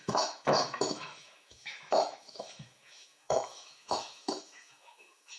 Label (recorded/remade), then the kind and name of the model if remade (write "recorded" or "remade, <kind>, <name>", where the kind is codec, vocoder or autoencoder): remade, autoencoder, DAC-VAE